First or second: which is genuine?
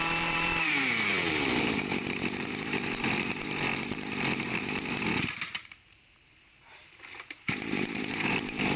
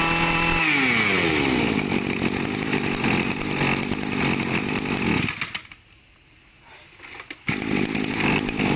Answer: second